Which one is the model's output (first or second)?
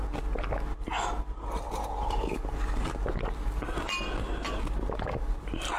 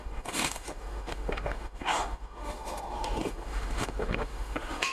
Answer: second